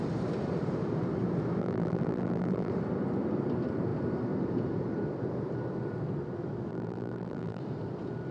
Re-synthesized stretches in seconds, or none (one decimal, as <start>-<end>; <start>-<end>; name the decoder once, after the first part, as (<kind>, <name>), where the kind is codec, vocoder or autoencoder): 1.6-2.7 (vocoder, BigVGAN v2); 6.7-7.6